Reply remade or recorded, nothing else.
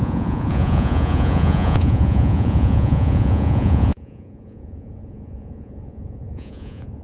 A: remade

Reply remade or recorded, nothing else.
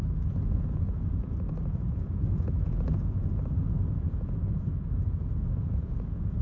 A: remade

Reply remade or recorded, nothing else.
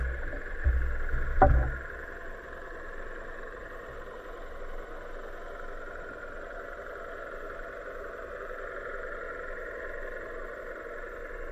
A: recorded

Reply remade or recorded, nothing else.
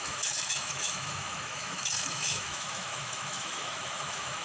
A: remade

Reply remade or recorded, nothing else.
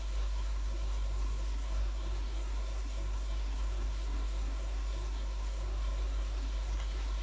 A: remade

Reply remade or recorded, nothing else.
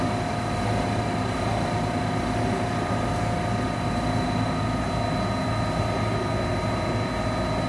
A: recorded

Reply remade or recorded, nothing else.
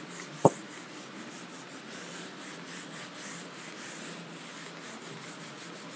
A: recorded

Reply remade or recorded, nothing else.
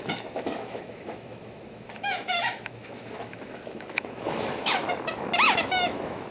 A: remade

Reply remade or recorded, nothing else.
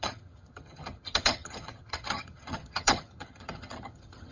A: remade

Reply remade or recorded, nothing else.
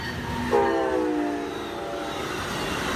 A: recorded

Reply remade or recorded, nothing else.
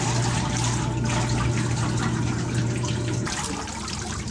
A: recorded